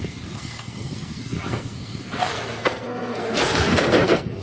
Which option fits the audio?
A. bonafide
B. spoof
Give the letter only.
B